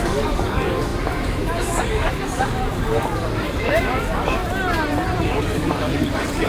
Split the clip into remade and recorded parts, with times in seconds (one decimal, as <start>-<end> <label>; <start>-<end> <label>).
0.0-4.4 remade; 4.4-5.2 recorded; 5.2-6.5 remade